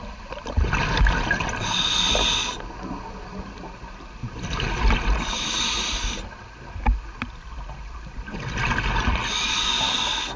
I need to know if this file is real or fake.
real